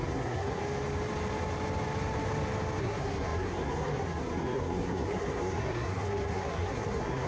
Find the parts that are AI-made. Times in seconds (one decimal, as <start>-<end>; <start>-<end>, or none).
0.0-0.6; 2.8-7.3